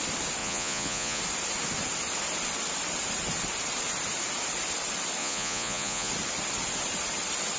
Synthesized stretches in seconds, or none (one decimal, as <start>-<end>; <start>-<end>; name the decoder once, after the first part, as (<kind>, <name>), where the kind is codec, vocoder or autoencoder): 0.4-1.2 (vocoder, Vocos); 5.2-6.1